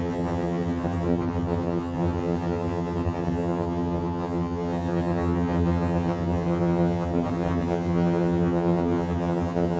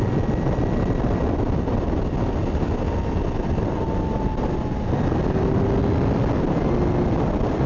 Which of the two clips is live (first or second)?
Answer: second